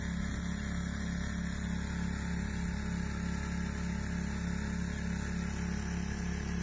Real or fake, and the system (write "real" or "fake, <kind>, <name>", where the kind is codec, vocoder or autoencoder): real